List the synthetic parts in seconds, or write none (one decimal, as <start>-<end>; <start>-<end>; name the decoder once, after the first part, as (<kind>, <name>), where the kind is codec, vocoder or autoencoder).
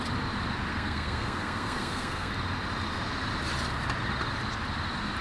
0.7-2.3 (codec, SNAC)